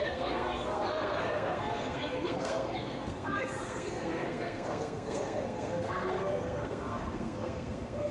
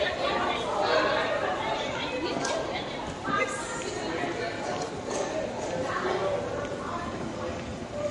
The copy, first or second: first